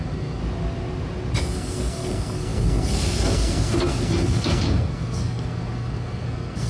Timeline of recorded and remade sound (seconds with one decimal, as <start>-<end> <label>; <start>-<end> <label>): 0.0-0.4 remade; 0.4-1.4 recorded; 1.4-6.7 remade